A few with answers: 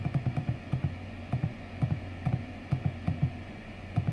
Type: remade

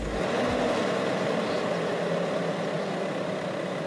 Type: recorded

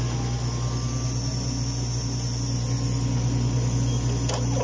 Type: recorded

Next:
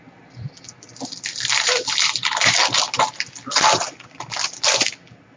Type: recorded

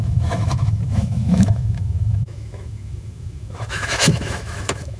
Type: remade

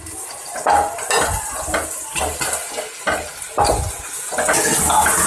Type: recorded